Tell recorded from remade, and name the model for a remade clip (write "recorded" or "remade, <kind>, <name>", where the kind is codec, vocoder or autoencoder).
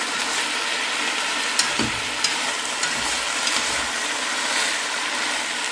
recorded